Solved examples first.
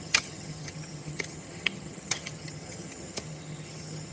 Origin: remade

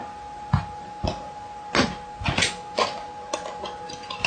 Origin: recorded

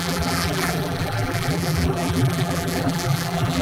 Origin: remade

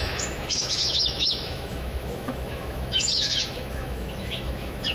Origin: remade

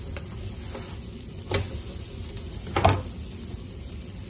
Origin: recorded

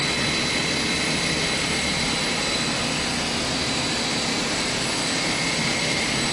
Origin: recorded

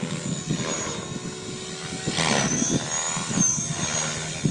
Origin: recorded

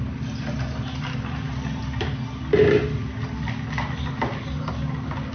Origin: recorded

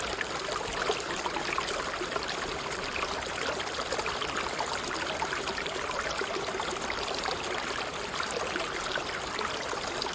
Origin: recorded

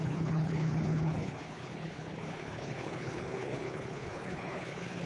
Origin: remade